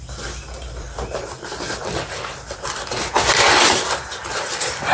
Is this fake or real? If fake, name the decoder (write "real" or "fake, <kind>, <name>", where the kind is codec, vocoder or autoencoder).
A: fake, vocoder, BigVGAN v2